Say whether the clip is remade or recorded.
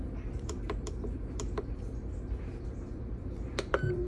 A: remade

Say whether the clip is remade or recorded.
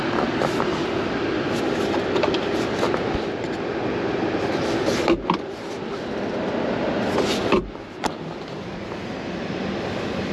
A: recorded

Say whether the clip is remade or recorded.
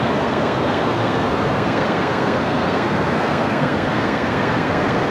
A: remade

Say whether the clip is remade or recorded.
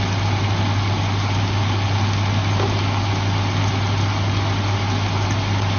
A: recorded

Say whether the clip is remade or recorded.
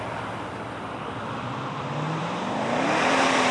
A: remade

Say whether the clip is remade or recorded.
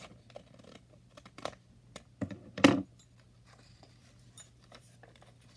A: recorded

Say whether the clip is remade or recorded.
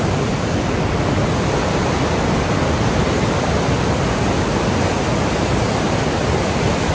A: remade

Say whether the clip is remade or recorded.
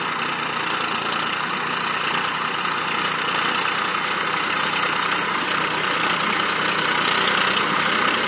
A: recorded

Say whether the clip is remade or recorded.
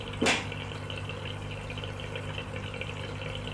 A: recorded